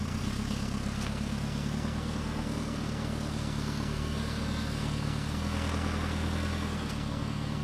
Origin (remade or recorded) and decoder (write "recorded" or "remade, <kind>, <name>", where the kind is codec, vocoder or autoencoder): remade, codec, SNAC